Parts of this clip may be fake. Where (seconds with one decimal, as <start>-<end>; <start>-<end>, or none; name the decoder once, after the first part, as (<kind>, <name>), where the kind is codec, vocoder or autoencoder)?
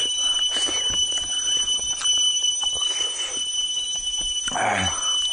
0.0-2.4 (vocoder, BigVGAN v2); 3.3-5.3